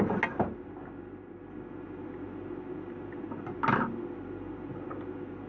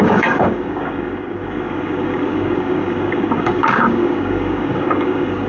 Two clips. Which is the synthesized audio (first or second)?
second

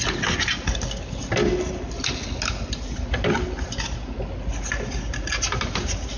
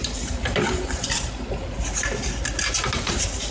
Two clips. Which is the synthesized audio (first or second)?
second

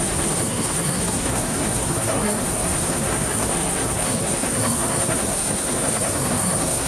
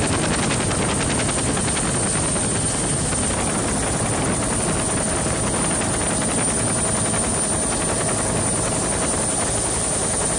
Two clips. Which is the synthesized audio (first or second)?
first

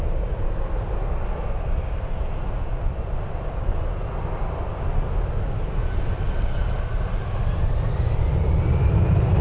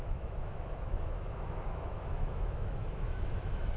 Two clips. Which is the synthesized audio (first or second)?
second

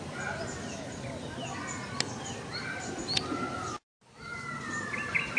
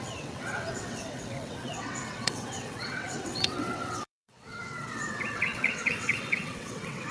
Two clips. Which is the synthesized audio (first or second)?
second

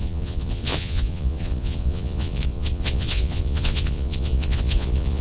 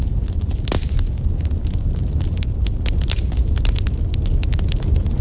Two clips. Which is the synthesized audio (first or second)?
first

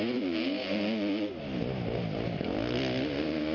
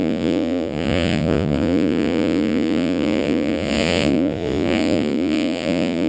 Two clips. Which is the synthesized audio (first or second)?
second